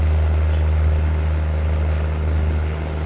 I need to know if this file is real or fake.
real